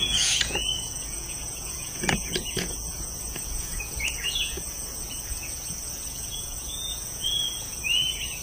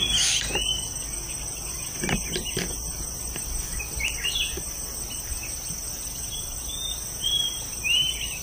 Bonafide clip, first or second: second